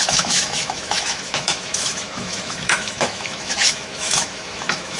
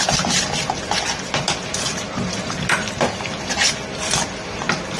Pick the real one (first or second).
second